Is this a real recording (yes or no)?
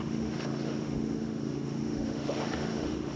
no